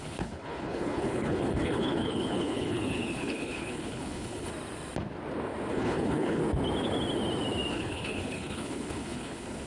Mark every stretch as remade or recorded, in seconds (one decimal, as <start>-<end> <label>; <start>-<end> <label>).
0.0-4.5 remade; 4.5-5.7 recorded; 5.7-6.4 remade; 6.4-7.7 recorded; 7.7-9.7 remade